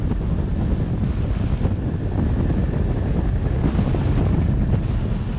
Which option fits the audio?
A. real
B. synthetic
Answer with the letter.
A